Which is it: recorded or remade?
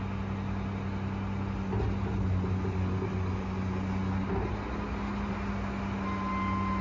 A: recorded